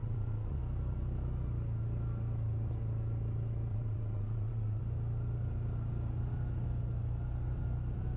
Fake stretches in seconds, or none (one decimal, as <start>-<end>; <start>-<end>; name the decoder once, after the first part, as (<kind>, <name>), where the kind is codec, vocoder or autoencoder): 0.0-0.6 (vocoder, WaveNeXt); 3.7-4.8